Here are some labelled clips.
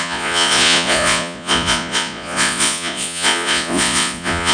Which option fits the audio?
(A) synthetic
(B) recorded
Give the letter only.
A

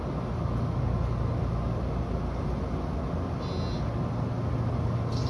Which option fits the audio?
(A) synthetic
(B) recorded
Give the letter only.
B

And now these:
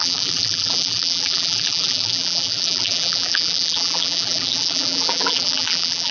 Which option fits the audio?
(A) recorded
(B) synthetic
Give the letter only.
B